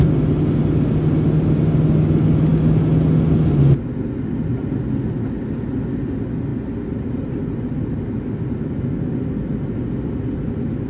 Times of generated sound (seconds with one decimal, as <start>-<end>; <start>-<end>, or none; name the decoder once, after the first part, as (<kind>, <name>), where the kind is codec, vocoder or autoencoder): none